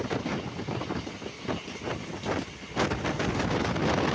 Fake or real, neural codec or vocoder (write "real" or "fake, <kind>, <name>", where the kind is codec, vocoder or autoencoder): real